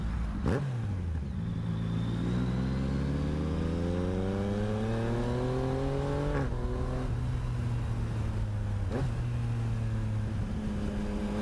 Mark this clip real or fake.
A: real